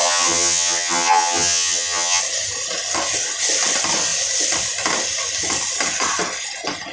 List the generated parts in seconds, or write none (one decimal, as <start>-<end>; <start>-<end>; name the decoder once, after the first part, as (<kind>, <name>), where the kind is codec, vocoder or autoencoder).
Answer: 0.0-2.2 (vocoder, HiFi-GAN)

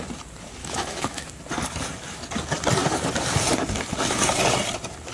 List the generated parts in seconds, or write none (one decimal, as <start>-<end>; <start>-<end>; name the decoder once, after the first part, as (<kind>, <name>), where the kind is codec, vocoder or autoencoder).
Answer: 0.6-1.3 (autoencoder, DAC-VAE)